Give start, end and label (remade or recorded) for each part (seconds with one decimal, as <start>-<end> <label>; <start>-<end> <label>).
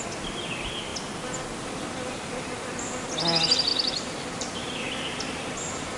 0.0-3.7 recorded; 3.7-4.8 remade; 4.8-6.0 recorded